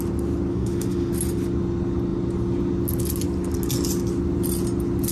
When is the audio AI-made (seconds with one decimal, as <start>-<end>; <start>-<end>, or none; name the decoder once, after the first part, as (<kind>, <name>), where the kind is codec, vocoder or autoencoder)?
0.5-1.1 (autoencoder, DAC-VAE)